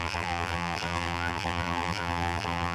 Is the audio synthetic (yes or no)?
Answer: yes